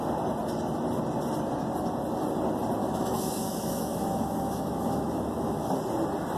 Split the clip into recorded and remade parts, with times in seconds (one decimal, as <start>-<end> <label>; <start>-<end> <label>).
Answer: 0.0-2.8 recorded; 2.8-5.7 remade; 5.7-6.4 recorded